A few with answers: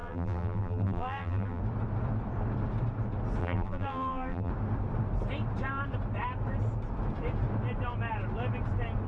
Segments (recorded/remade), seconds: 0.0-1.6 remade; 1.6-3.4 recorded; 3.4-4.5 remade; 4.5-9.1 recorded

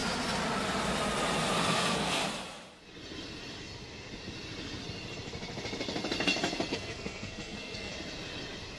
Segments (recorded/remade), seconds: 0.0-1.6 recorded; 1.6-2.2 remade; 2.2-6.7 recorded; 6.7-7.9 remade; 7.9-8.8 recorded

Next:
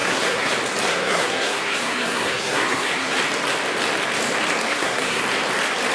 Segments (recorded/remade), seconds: 0.0-0.5 remade; 0.5-0.9 recorded; 0.9-3.2 remade; 3.2-4.7 recorded; 4.7-5.2 remade; 5.2-5.9 recorded